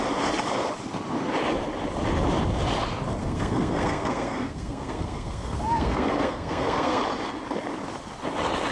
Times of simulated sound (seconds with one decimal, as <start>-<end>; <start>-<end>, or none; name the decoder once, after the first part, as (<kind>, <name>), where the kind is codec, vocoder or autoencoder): 3.2-7.0 (codec, SNAC)